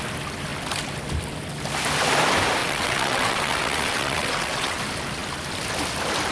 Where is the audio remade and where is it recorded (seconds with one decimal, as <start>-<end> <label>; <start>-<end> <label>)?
0.0-2.6 recorded; 2.6-4.8 remade; 4.8-6.3 recorded